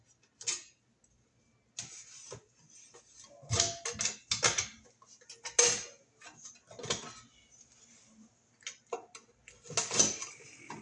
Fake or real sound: real